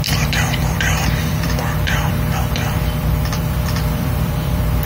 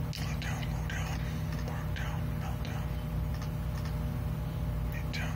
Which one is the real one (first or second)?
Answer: second